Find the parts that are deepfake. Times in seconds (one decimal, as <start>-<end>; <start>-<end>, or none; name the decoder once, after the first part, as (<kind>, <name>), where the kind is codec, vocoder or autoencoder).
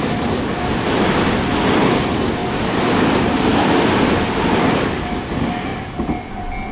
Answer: 2.4-3.1 (vocoder, BigVGAN v2); 3.5-4.0; 5.7-6.3